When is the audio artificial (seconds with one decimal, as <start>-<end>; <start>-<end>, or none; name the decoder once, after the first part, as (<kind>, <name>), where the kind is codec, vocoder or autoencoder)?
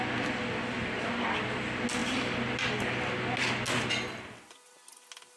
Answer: none